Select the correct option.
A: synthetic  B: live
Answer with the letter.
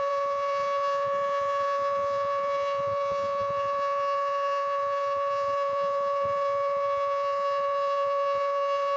A